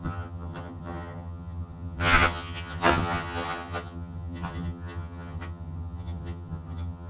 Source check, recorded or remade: remade